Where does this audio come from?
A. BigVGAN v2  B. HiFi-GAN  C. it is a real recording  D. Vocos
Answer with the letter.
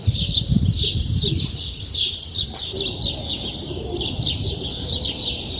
C